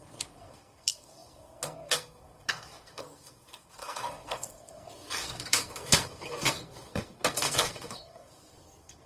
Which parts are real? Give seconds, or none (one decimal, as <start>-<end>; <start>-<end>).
none